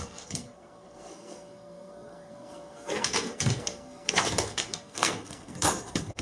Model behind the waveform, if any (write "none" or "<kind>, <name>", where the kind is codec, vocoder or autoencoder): codec, SNAC